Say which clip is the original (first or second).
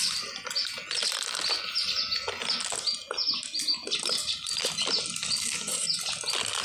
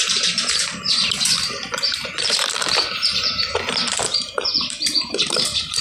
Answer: first